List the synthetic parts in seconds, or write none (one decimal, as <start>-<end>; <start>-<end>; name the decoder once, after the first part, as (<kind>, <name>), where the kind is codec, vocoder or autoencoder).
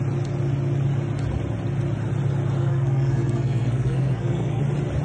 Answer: 2.6-4.6 (codec, SNAC)